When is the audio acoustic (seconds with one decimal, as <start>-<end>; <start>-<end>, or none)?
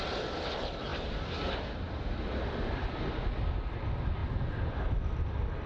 0.0-5.7